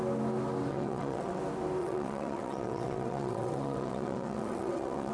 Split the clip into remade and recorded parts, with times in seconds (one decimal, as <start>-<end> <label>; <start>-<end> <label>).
0.0-0.7 recorded; 0.7-1.4 remade; 1.4-1.8 recorded; 1.8-5.1 remade